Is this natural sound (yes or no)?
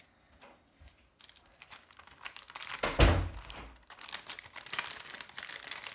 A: yes